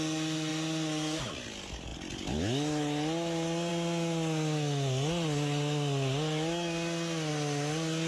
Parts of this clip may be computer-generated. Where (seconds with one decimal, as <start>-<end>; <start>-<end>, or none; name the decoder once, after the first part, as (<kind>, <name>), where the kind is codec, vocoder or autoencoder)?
none